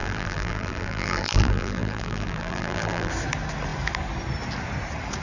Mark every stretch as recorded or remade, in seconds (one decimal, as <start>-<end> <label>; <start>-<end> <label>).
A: 0.0-3.1 remade; 3.1-5.2 recorded